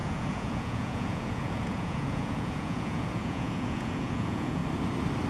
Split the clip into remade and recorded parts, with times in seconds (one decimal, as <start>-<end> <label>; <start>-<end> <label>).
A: 0.0-4.6 remade; 4.6-5.3 recorded

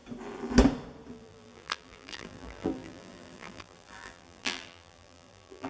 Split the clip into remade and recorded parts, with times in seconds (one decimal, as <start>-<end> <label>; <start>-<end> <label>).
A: 0.0-1.1 recorded; 1.1-5.7 remade

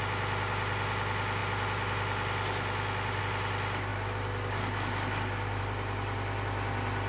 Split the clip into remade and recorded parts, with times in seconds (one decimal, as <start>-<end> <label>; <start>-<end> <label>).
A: 0.0-7.1 recorded

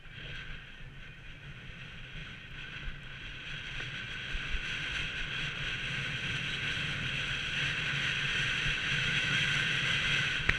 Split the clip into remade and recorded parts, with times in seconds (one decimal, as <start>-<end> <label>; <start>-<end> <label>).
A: 0.0-8.8 recorded; 8.8-9.4 remade; 9.4-10.6 recorded

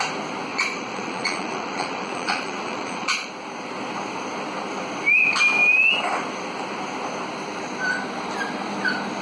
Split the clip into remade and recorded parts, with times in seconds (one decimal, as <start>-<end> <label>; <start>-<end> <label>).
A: 0.0-0.5 recorded; 0.5-3.3 remade; 3.3-9.2 recorded